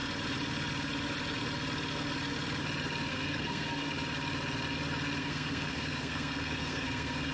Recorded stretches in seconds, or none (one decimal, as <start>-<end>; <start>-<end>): 0.0-3.1; 3.9-5.2